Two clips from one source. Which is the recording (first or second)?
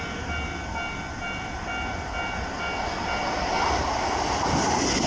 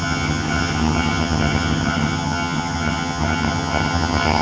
first